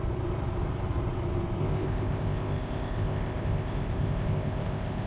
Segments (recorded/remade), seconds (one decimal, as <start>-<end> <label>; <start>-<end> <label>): 0.0-1.6 recorded; 1.6-5.1 remade